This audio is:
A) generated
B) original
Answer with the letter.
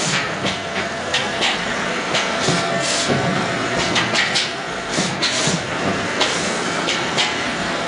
A